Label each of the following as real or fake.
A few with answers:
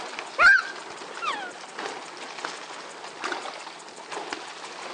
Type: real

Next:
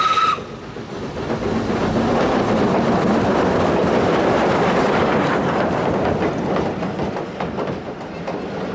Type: real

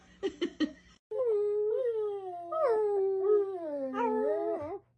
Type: real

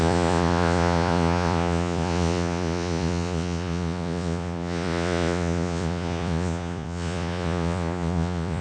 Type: fake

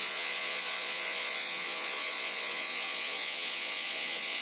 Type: fake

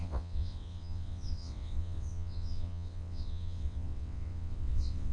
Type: fake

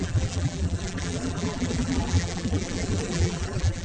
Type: fake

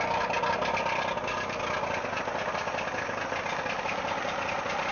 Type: real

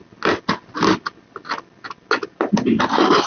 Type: real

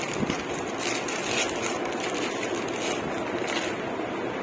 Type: real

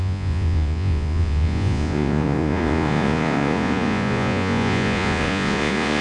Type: fake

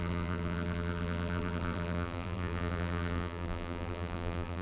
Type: fake